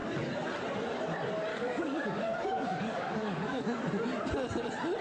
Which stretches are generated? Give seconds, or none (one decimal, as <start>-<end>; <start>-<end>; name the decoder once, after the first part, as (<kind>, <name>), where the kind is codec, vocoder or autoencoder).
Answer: 1.5-3.8 (codec, DAC)